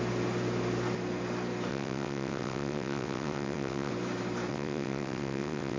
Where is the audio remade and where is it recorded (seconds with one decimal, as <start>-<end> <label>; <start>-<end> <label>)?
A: 0.0-1.7 recorded; 1.7-3.9 remade; 3.9-4.5 recorded; 4.5-5.8 remade